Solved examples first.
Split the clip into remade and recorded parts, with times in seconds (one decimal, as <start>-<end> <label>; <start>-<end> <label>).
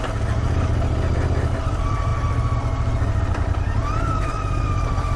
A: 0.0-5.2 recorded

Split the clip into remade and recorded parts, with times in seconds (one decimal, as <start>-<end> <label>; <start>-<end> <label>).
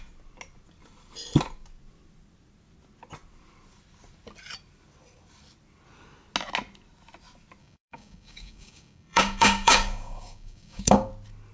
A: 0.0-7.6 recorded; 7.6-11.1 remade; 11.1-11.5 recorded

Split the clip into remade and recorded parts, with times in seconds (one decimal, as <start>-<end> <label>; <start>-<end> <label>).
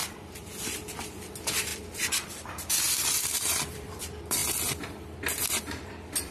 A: 0.0-0.6 recorded; 0.6-4.4 remade; 4.4-5.5 recorded; 5.5-6.3 remade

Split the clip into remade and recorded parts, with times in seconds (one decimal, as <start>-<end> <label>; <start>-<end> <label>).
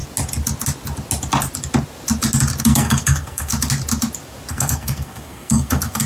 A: 0.0-2.6 recorded; 2.6-3.5 remade; 3.5-4.5 recorded; 4.5-6.1 remade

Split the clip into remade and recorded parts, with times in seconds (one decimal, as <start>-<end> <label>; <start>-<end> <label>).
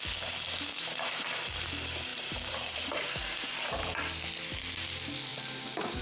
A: 0.0-0.7 recorded; 0.7-1.7 remade; 1.7-2.1 recorded; 2.1-4.0 remade; 4.0-6.0 recorded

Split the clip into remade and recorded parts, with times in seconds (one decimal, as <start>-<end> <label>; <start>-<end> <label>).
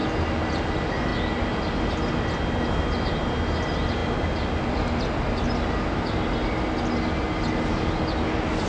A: 0.0-8.7 recorded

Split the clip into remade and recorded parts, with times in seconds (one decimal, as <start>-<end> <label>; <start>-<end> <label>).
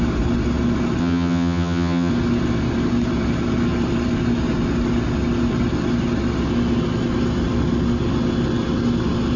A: 0.0-1.0 recorded; 1.0-2.1 remade; 2.1-9.4 recorded